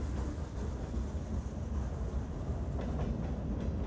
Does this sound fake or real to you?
real